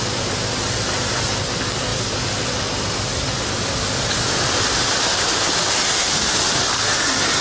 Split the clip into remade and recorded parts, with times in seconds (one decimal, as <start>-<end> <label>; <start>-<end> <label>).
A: 0.0-1.9 recorded; 1.9-6.3 remade; 6.3-7.4 recorded